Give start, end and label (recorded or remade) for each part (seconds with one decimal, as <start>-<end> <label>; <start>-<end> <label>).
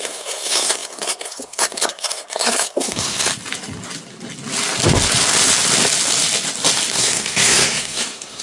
0.0-3.3 remade; 3.3-6.9 recorded; 6.9-8.4 remade